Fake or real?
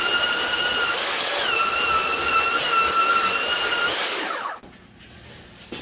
real